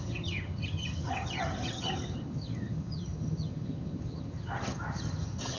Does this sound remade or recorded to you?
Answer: remade